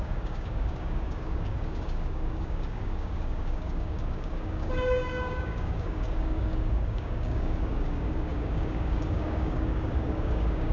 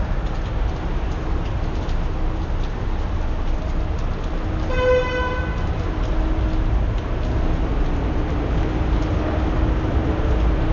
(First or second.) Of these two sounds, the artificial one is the first